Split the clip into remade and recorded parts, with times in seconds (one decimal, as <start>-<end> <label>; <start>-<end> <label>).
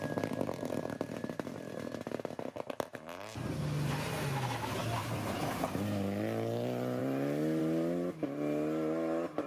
0.0-9.5 recorded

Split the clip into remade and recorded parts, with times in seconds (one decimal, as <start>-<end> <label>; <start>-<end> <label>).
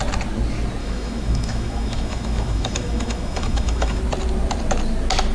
0.0-0.8 recorded; 0.8-4.0 remade; 4.0-5.3 recorded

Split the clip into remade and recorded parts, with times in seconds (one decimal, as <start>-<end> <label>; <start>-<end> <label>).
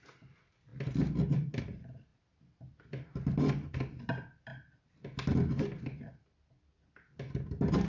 0.0-7.9 recorded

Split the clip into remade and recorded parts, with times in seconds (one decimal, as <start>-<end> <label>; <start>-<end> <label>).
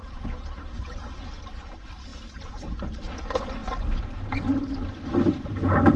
0.0-1.2 remade; 1.2-6.0 recorded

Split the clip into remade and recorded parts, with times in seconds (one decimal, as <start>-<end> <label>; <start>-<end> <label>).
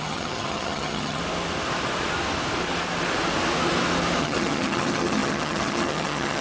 0.0-1.2 remade; 1.2-4.2 recorded; 4.2-6.4 remade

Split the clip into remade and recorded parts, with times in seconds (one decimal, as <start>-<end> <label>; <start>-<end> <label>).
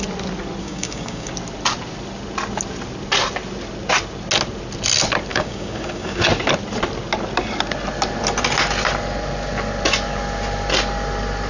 0.0-0.6 recorded; 0.6-1.3 remade; 1.3-5.3 recorded; 5.3-6.2 remade; 6.2-11.5 recorded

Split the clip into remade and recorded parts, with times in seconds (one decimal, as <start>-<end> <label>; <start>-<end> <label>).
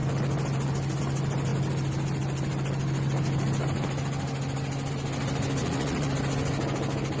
0.0-5.6 recorded; 5.6-6.1 remade; 6.1-7.2 recorded